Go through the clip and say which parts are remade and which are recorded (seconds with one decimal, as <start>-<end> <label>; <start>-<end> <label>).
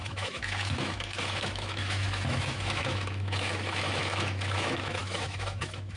0.0-6.0 remade